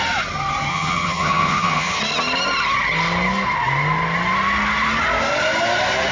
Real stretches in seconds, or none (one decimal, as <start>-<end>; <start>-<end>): 0.0-0.7; 2.0-6.1